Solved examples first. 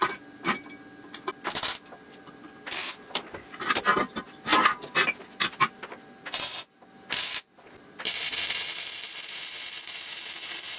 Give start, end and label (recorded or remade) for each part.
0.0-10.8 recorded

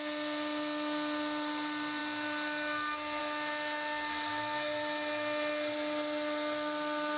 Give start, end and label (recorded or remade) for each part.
0.0-7.2 recorded